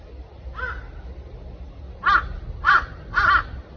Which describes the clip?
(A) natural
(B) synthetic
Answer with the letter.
A